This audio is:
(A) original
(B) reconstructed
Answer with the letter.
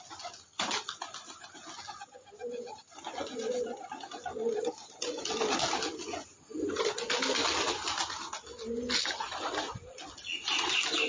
A